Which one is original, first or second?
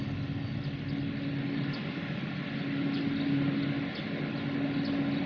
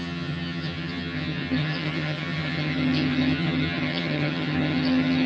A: first